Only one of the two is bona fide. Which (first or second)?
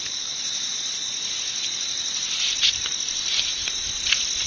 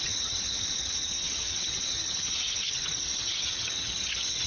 first